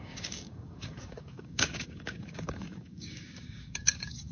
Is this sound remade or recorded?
remade